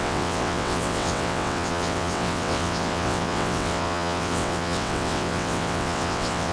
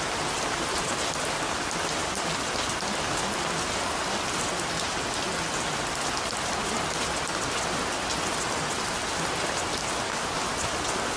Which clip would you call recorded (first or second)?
second